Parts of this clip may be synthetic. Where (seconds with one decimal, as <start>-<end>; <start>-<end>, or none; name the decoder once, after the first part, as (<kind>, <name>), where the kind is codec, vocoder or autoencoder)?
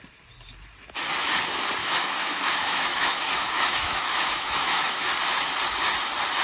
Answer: 1.8-5.1 (autoencoder, DAC-VAE)